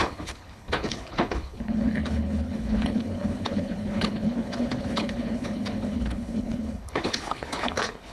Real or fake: fake